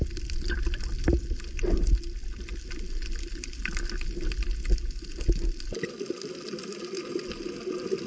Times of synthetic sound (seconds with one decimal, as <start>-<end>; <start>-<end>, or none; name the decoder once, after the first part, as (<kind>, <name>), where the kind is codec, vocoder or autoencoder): none